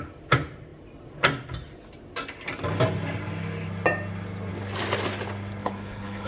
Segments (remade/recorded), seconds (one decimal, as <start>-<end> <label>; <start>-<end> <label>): 0.0-5.6 recorded; 5.6-6.3 remade